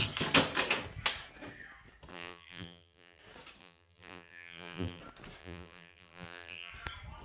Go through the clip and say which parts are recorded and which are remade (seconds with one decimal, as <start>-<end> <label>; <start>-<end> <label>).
0.0-2.1 recorded; 2.1-3.2 remade; 3.2-3.6 recorded; 3.6-5.0 remade; 5.0-5.4 recorded; 5.4-6.7 remade; 6.7-7.2 recorded